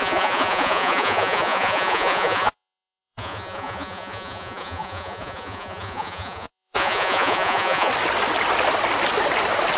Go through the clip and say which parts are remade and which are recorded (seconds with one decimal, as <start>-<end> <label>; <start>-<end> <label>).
0.0-7.9 remade; 7.9-9.8 recorded

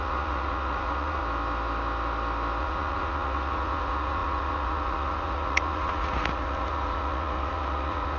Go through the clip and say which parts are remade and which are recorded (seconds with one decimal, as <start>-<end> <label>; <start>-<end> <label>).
0.0-1.2 remade; 1.2-2.6 recorded; 2.6-8.2 remade